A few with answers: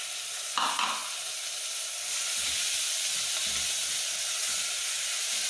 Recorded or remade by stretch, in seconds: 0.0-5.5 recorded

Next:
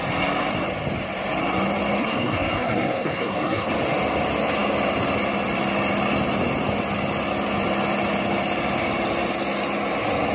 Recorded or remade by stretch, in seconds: 0.0-2.0 recorded; 2.0-3.7 remade; 3.7-10.3 recorded

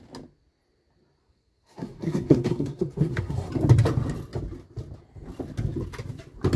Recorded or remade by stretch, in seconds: 0.0-1.2 recorded; 1.2-3.5 remade; 3.5-6.6 recorded

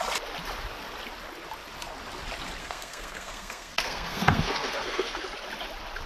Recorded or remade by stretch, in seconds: 0.0-2.6 recorded; 2.6-5.2 remade; 5.2-6.1 recorded

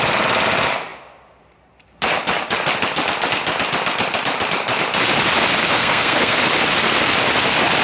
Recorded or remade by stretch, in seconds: 0.0-5.6 recorded; 5.6-6.4 remade; 6.4-7.8 recorded

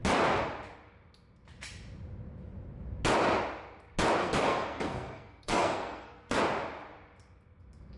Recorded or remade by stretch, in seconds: 0.0-4.2 recorded; 4.2-6.4 remade; 6.4-8.0 recorded